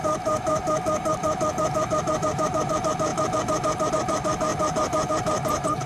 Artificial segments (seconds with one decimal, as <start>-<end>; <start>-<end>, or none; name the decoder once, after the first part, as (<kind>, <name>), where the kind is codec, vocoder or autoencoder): 0.0-1.2 (vocoder, BigVGAN v2); 2.2-3.1; 3.9-4.5; 5.1-5.9